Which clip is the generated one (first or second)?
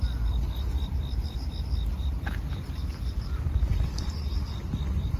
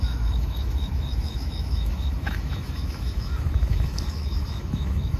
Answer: second